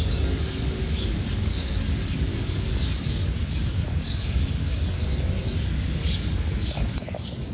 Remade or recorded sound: remade